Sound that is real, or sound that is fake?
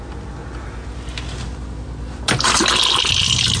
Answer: real